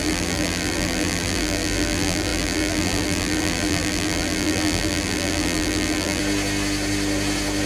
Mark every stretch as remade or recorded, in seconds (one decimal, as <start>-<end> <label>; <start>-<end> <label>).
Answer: 0.0-6.2 remade; 6.2-7.7 recorded